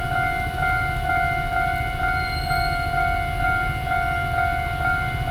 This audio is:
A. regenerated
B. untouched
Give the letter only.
B